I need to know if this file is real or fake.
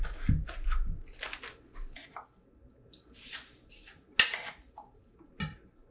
real